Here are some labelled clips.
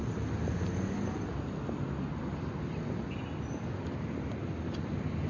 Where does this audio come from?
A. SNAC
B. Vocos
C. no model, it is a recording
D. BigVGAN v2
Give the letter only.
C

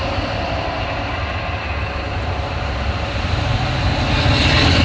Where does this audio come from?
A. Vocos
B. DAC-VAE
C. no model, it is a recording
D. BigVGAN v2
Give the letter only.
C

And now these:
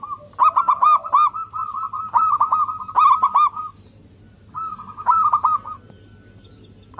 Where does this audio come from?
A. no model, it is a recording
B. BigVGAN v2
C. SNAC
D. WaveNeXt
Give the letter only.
A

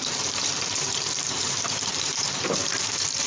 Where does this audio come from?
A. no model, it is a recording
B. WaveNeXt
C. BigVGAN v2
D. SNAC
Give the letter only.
C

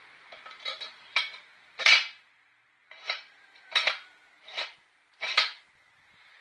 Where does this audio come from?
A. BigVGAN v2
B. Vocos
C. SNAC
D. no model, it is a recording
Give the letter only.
A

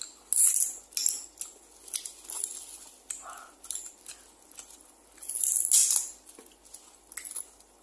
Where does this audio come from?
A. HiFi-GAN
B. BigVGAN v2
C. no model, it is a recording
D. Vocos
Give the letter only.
C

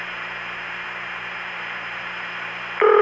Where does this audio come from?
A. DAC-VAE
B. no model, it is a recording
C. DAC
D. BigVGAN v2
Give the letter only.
D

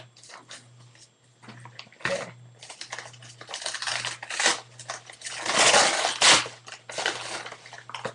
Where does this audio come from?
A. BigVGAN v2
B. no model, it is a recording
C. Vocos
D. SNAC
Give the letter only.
B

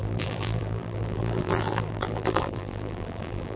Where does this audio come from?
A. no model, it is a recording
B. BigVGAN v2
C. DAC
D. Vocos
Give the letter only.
B